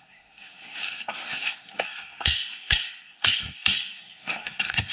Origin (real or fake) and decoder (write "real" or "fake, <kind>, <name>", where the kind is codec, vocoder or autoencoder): fake, codec, SNAC